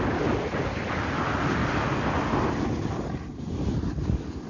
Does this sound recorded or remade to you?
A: recorded